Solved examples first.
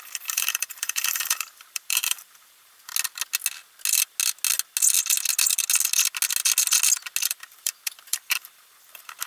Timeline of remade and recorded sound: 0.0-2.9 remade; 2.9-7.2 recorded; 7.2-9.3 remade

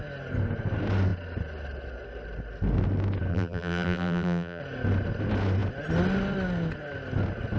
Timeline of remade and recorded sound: 0.0-3.3 recorded; 3.3-4.6 remade; 4.6-7.6 recorded

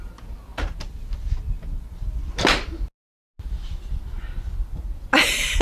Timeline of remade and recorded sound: 0.0-5.6 recorded

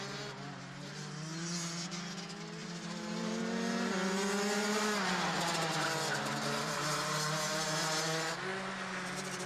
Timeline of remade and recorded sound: 0.0-9.5 recorded

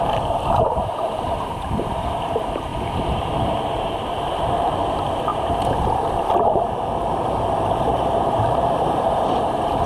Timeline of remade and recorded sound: 0.0-5.3 remade; 5.3-5.9 recorded; 5.9-9.9 remade

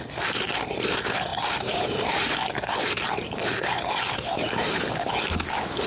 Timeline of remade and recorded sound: 0.0-1.3 recorded; 1.3-4.8 remade; 4.8-5.9 recorded

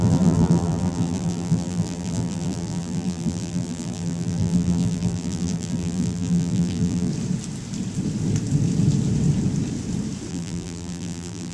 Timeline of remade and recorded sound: 0.0-7.1 remade; 7.1-10.3 recorded; 10.3-11.5 remade

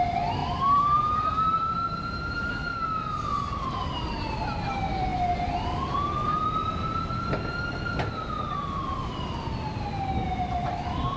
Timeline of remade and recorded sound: 0.0-0.4 recorded; 0.4-3.7 remade; 3.7-11.2 recorded